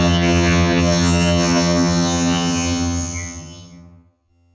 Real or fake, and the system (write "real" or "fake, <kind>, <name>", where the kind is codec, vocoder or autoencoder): fake, vocoder, HiFi-GAN